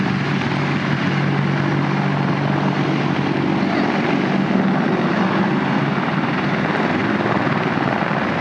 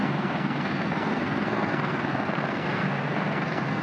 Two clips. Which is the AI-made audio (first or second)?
second